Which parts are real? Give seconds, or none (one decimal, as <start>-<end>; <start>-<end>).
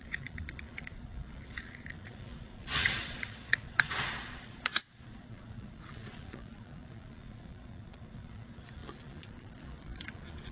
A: none